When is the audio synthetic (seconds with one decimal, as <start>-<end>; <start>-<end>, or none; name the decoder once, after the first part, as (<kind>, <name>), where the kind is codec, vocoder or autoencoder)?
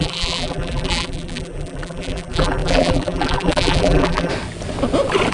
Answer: 0.0-4.3 (vocoder, BigVGAN v2)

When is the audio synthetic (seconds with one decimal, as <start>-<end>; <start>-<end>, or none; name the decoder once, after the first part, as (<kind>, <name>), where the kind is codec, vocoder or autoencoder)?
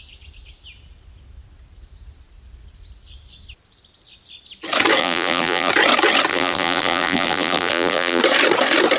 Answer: 5.0-5.7 (vocoder, BigVGAN v2); 6.3-8.2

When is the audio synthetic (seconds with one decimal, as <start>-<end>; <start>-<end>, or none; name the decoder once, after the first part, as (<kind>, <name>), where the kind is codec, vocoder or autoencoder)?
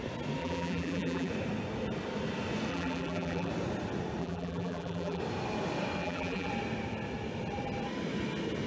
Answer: 0.4-1.3 (vocoder, BigVGAN v2); 2.7-3.5; 4.2-5.2; 6.0-6.5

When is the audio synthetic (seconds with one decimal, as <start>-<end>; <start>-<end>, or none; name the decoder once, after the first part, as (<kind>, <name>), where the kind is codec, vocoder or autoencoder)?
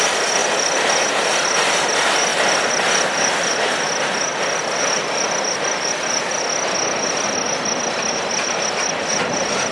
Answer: 2.3-6.4 (vocoder, BigVGAN v2)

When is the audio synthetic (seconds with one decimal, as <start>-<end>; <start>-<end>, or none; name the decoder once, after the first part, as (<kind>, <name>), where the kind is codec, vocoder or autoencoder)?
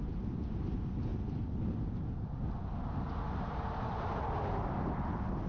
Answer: 1.1-4.4 (vocoder, BigVGAN v2)